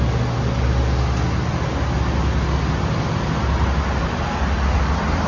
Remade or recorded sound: recorded